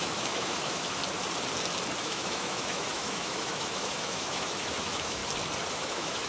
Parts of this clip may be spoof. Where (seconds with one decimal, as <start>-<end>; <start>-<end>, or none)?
0.0-1.0; 2.0-5.2; 5.7-6.3